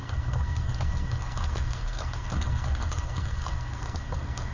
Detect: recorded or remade remade